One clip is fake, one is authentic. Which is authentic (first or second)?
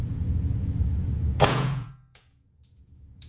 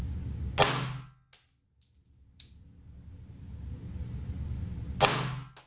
second